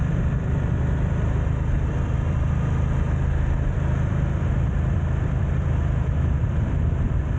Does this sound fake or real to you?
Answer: fake